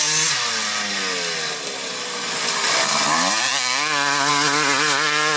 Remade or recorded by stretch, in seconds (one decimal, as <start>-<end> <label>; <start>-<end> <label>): 0.0-5.4 recorded